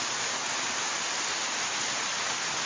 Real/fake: real